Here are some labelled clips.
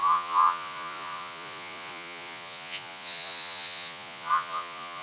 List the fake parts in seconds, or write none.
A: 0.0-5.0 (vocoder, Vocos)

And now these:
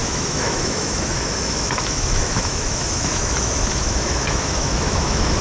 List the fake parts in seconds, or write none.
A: 0.0-5.4 (autoencoder, DAC-VAE)

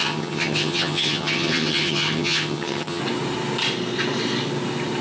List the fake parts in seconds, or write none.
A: 0.0-3.0 (vocoder, HiFi-GAN)

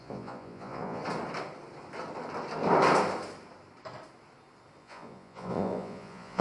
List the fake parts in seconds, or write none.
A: 0.0-1.0 (vocoder, Vocos); 4.8-6.4

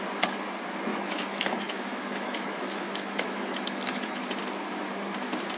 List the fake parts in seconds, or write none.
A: 0.9-4.3 (autoencoder, DAC-VAE)

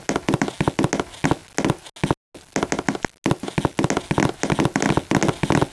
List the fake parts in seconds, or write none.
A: none